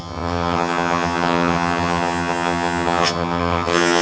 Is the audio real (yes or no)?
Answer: no